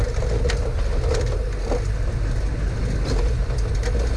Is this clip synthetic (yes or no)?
no